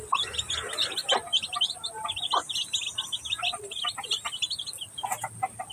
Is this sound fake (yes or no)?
no